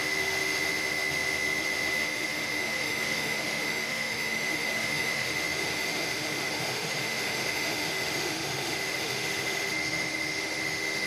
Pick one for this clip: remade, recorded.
remade